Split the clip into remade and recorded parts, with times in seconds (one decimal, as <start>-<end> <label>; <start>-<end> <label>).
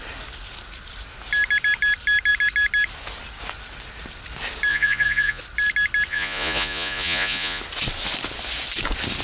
0.0-4.7 recorded; 4.7-5.4 remade; 5.4-6.1 recorded; 6.1-7.6 remade; 7.6-9.2 recorded